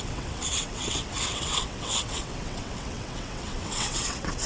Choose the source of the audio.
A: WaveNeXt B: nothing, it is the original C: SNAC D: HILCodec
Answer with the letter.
A